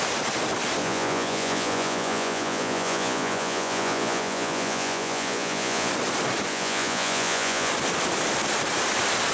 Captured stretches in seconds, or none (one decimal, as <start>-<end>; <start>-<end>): 0.0-0.8; 5.9-6.5; 7.7-9.3